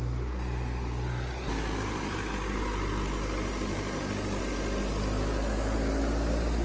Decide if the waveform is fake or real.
real